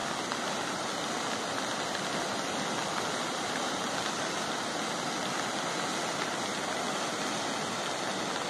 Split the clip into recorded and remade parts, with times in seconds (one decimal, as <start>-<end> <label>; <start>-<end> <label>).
0.0-8.5 recorded